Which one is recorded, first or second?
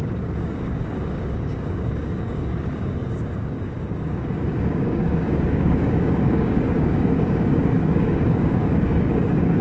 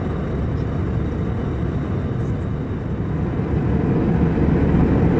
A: second